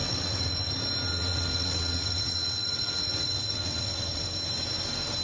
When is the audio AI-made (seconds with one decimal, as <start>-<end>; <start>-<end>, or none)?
0.0-0.7; 1.1-4.2